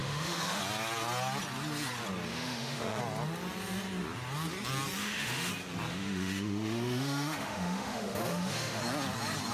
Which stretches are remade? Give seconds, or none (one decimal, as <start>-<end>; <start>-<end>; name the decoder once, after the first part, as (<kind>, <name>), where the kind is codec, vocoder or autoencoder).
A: 0.0-0.6 (autoencoder, DAC-VAE); 2.3-3.0; 5.0-5.5; 5.9-8.8

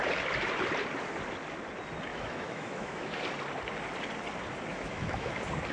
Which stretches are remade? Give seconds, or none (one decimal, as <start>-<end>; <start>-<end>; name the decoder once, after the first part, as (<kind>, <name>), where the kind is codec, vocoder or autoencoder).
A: 2.1-3.2 (autoencoder, DAC-VAE); 4.7-5.3